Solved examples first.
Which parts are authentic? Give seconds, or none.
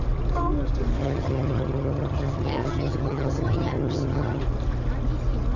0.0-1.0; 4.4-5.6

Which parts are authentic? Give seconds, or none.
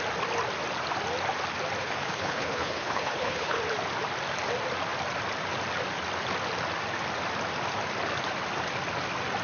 0.0-1.8; 3.6-9.4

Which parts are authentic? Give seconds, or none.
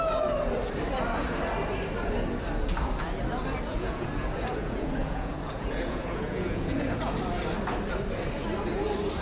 0.0-3.7; 7.0-9.2